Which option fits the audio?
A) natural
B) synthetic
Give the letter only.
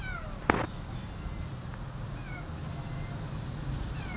A